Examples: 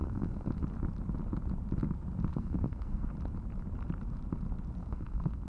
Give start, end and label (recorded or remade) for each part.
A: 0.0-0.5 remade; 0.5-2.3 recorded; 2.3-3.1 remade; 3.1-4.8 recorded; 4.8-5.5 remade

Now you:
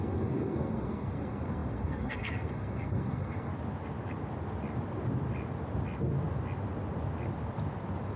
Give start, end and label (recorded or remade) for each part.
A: 0.0-3.5 remade; 3.5-8.2 recorded